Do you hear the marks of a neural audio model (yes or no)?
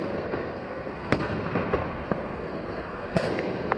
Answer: yes